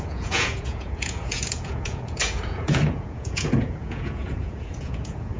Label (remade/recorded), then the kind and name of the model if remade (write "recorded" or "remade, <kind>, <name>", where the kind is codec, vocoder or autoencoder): remade, vocoder, Vocos